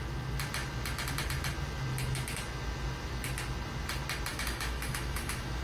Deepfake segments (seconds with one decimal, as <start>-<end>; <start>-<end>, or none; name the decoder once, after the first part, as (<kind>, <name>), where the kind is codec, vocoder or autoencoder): 4.3-5.6 (autoencoder, DAC-VAE)